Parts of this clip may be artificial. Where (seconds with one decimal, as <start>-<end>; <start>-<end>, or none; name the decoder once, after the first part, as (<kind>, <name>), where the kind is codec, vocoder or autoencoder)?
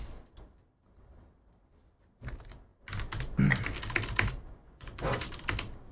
4.6-5.3 (vocoder, Vocos)